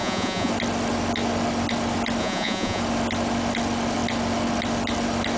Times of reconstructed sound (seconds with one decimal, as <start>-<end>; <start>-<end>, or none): 0.0-0.5; 2.2-2.8